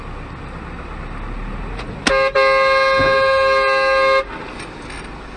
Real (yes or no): yes